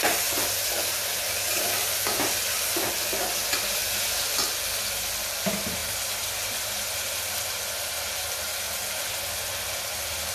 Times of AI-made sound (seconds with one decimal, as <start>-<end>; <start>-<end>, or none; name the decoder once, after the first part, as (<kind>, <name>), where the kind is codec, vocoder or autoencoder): none